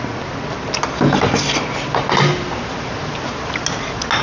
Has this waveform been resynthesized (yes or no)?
no